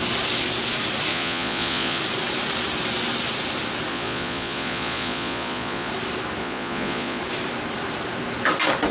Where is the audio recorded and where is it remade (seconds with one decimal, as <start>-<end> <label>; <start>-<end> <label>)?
0.0-1.1 recorded; 1.1-2.0 remade; 2.0-3.9 recorded; 3.9-5.9 remade; 5.9-6.4 recorded; 6.4-7.2 remade; 7.2-8.9 recorded